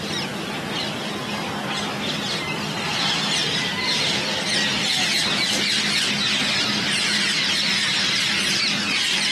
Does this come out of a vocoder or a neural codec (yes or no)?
no